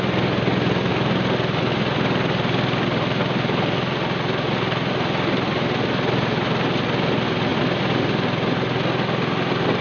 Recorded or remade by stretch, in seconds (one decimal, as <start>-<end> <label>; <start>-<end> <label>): 0.0-9.8 recorded